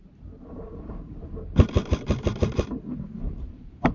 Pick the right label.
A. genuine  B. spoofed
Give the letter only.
A